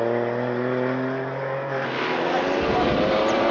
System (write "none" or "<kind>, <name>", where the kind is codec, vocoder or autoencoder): none